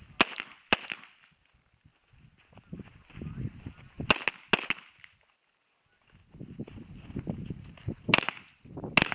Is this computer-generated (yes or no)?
no